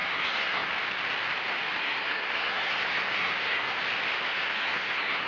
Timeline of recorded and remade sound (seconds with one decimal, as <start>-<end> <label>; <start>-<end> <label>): 0.0-0.7 remade; 0.7-1.8 recorded; 1.8-3.8 remade; 3.8-4.3 recorded; 4.3-5.3 remade